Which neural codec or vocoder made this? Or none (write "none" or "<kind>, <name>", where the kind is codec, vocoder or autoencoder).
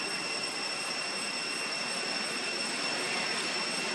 none